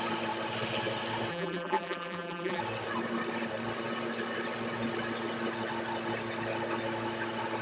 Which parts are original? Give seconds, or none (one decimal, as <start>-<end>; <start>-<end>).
0.0-1.3; 2.6-7.6